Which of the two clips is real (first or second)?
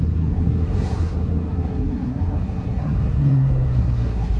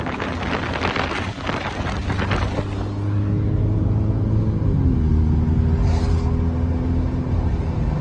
second